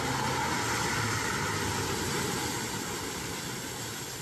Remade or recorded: recorded